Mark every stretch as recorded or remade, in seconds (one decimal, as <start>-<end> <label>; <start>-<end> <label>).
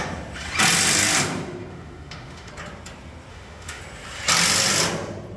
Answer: 0.0-1.7 recorded; 1.7-2.5 remade; 2.5-3.3 recorded; 3.3-3.8 remade; 3.8-5.4 recorded